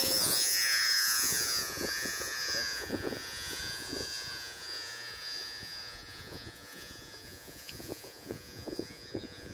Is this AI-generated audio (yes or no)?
yes